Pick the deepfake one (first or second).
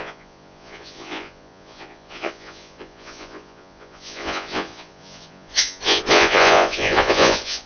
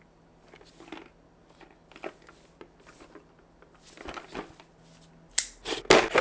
first